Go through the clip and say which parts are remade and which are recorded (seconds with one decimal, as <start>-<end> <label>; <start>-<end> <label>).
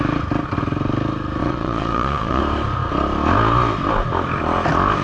0.0-1.4 recorded; 1.4-2.4 remade; 2.4-5.0 recorded